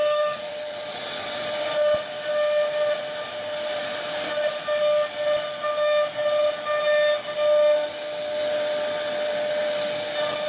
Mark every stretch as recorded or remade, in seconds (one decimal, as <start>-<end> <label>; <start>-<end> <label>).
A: 0.0-0.5 remade; 0.5-10.5 recorded

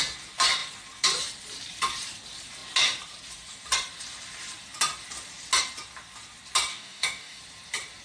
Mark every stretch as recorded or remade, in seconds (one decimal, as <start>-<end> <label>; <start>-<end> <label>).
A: 0.0-6.7 recorded; 6.7-7.4 remade; 7.4-8.0 recorded

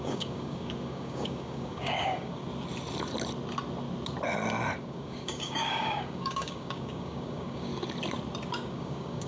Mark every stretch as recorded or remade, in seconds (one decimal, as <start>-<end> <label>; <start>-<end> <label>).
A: 0.0-2.4 remade; 2.4-4.8 recorded; 4.8-7.7 remade; 7.7-8.5 recorded; 8.5-9.3 remade

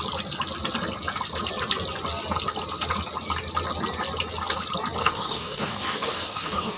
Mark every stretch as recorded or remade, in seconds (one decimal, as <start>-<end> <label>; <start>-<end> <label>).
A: 0.0-5.0 recorded; 5.0-6.8 remade